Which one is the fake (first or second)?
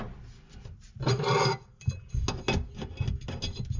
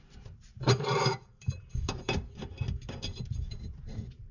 second